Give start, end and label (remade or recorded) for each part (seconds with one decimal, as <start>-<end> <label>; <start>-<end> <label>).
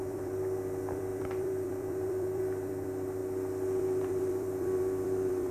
0.0-3.2 remade; 3.2-3.8 recorded; 3.8-5.5 remade